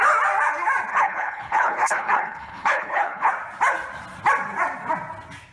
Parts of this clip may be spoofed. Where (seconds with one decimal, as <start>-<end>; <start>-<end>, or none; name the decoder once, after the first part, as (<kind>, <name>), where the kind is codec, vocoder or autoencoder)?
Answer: 0.9-3.3 (codec, HILCodec)